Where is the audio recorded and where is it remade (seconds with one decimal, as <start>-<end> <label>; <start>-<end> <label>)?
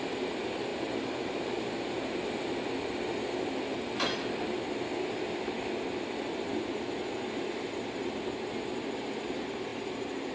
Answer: 0.0-10.3 recorded